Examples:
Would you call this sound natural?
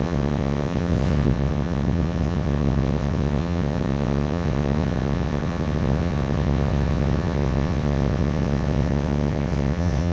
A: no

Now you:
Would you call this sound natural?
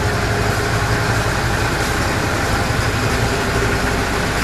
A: yes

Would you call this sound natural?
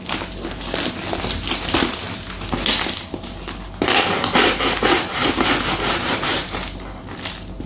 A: yes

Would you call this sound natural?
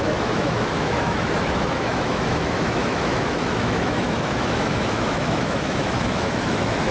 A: no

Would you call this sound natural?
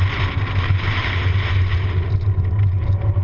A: yes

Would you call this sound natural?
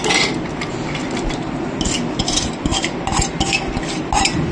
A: yes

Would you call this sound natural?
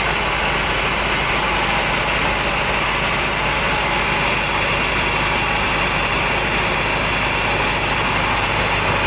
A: yes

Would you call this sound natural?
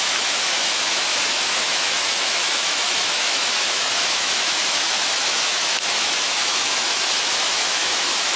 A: no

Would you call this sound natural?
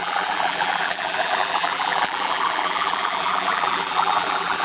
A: no